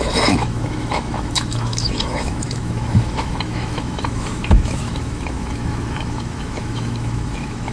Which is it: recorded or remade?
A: remade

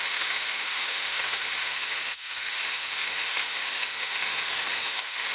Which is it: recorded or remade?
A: remade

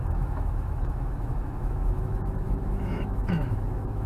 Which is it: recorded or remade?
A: remade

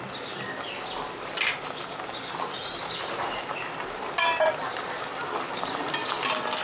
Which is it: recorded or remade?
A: recorded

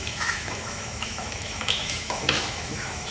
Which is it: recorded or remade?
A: remade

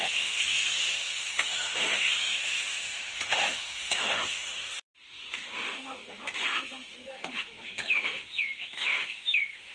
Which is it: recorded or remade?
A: remade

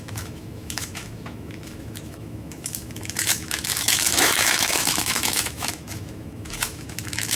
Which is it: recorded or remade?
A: remade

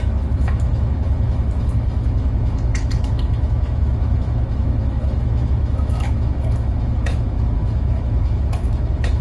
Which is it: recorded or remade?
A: remade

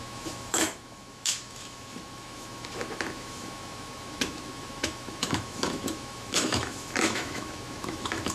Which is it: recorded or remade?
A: remade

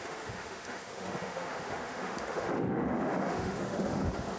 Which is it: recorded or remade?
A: remade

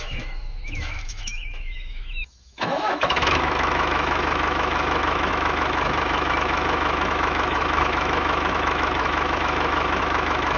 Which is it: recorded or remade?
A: remade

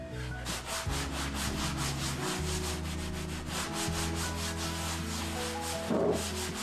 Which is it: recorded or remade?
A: recorded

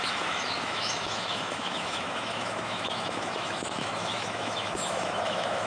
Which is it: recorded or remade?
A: remade